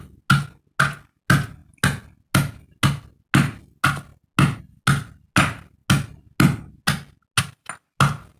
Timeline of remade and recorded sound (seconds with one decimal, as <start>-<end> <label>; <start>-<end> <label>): 0.0-8.4 recorded